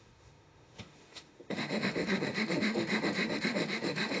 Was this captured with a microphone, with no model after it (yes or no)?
no